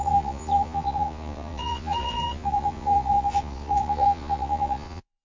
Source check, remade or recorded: remade